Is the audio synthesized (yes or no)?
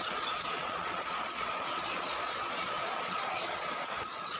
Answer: yes